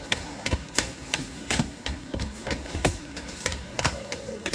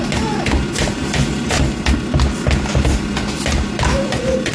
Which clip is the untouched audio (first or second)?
second